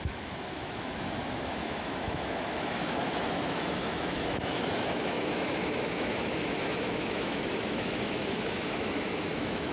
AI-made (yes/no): yes